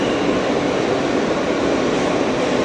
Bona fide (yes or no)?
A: yes